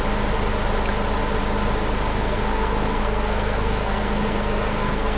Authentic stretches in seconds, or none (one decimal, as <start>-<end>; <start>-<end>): 0.0-2.1